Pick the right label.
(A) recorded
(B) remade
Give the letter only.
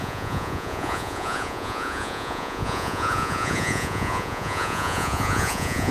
B